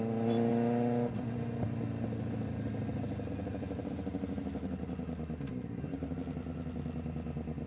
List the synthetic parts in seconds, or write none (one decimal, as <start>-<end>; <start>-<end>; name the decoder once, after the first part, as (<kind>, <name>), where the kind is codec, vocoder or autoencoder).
none